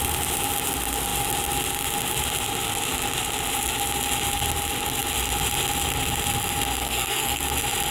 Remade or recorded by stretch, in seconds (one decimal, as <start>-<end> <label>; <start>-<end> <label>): 0.0-6.8 recorded; 6.8-7.4 remade; 7.4-7.9 recorded